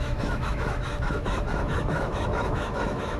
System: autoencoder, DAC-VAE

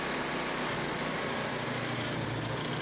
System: none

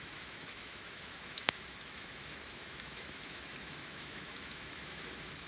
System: autoencoder, DAC-VAE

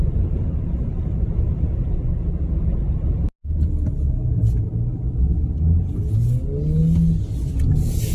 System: none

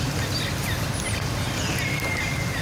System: none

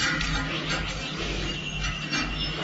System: none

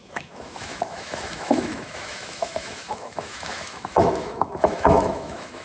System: autoencoder, DAC-VAE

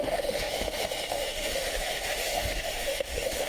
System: autoencoder, DAC-VAE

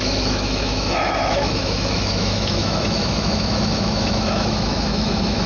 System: autoencoder, DAC-VAE